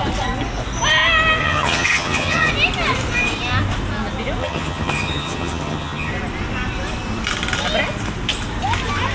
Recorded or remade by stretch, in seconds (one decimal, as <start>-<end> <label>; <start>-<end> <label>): 0.0-1.4 recorded; 1.4-2.5 remade; 2.5-4.4 recorded; 4.4-6.1 remade; 6.1-9.1 recorded